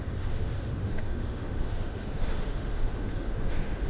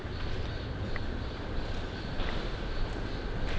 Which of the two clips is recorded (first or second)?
second